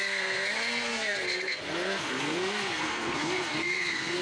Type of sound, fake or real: fake